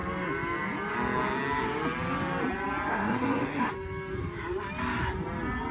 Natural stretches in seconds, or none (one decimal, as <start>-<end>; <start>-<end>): 0.0-2.9; 3.7-5.7